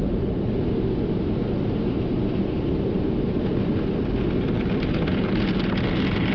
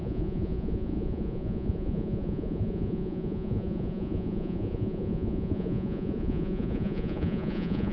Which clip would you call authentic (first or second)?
first